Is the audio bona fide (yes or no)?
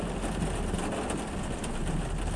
yes